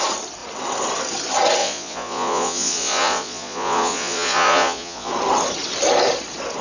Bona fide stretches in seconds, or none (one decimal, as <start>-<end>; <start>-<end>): 0.0-1.6; 5.1-6.6

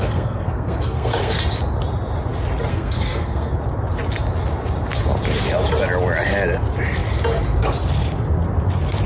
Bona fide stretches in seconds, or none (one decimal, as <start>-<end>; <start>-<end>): 1.4-2.7; 3.5-9.1

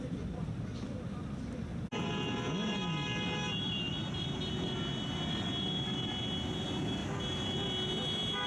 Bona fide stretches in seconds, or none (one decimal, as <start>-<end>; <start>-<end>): 0.0-8.5

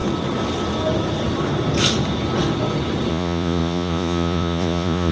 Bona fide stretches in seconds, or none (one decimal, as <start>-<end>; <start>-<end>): 0.0-3.1

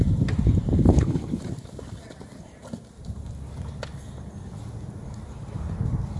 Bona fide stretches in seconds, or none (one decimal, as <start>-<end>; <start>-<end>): 0.0-0.9; 1.4-6.2

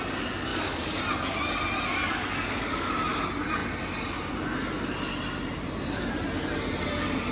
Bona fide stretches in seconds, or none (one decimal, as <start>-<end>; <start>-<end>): 0.0-0.5; 1.0-2.0; 2.9-7.3

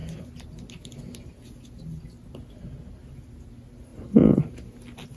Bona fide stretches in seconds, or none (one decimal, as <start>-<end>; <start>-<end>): 0.0-3.9; 4.4-5.2